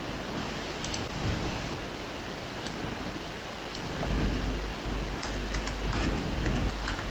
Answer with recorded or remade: recorded